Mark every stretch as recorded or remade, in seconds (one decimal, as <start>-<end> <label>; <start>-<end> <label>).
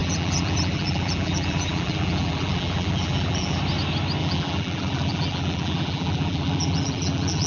0.0-3.6 remade; 3.6-4.2 recorded; 4.2-7.5 remade